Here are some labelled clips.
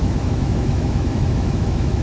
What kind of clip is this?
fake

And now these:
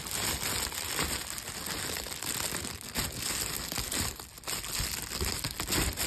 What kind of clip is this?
real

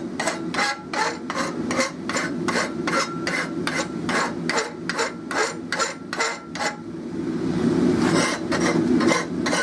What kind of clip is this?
real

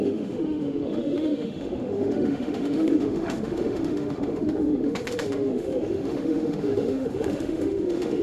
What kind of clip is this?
fake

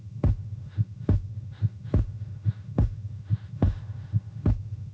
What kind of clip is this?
fake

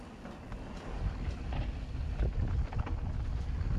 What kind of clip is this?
real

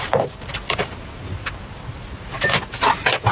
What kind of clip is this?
real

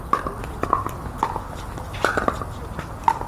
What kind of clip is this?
real